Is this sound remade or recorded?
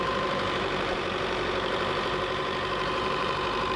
remade